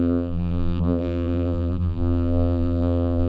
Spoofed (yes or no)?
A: yes